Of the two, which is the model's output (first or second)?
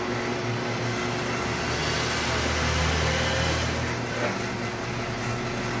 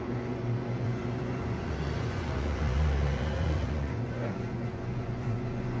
second